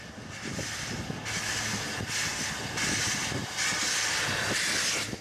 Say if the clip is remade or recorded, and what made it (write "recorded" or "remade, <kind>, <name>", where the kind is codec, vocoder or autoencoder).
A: recorded